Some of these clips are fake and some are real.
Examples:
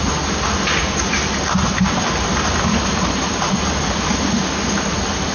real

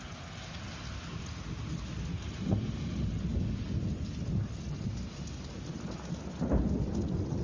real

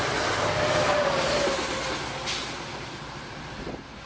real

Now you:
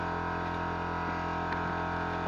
real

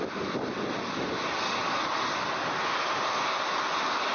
real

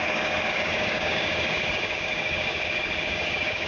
fake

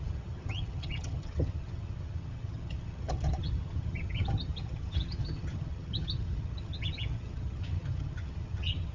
fake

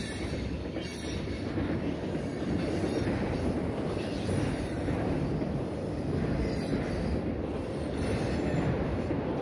fake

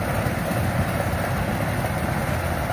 real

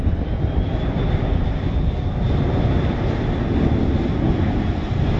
real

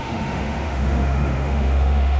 fake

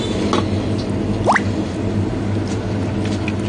real